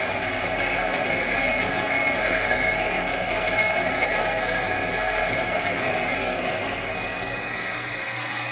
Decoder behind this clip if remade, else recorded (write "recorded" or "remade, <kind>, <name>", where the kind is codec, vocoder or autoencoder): remade, codec, SNAC